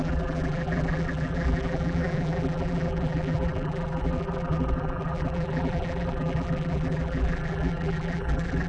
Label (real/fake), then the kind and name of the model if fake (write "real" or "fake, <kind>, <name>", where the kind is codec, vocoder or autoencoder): fake, vocoder, BigVGAN v2